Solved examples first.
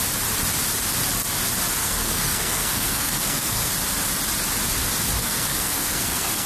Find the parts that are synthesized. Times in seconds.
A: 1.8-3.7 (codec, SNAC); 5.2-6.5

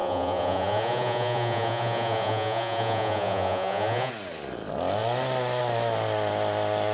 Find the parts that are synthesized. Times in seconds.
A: 0.0-4.1 (vocoder, Vocos)

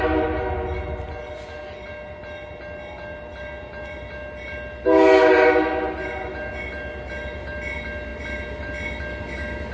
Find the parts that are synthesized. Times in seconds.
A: none

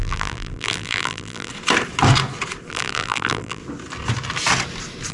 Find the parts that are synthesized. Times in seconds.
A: 0.0-1.5 (vocoder, BigVGAN v2); 2.7-3.6

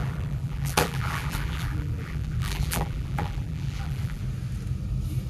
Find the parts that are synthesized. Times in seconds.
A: 0.0-4.2 (vocoder, BigVGAN v2)

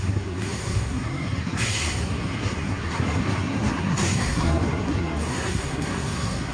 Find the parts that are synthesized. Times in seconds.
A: 0.0-6.5 (codec, SNAC)

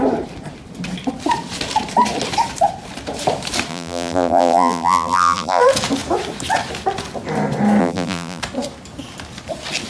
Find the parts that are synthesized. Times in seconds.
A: 3.7-5.6 (vocoder, BigVGAN v2); 7.8-8.4